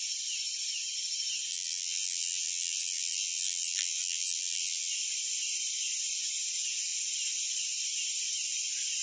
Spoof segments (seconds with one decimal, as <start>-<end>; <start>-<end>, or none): 1.5-4.9